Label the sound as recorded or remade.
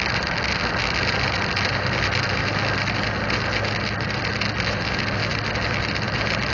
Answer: recorded